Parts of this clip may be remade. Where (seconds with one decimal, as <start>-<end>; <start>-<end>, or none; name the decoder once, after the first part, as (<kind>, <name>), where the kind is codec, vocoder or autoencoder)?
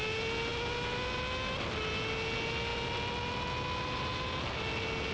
none